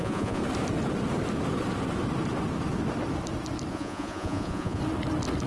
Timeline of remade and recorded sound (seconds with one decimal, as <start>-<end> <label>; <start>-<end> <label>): 0.0-0.4 remade; 0.4-3.7 recorded; 3.7-4.8 remade; 4.8-5.5 recorded